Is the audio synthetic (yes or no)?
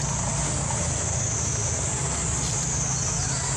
no